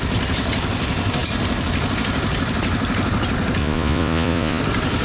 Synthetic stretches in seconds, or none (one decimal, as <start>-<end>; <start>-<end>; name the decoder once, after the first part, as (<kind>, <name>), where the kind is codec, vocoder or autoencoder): 3.6-4.6 (vocoder, Vocos)